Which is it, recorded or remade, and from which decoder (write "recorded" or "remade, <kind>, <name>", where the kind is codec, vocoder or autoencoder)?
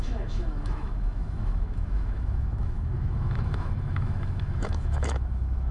remade, autoencoder, DAC-VAE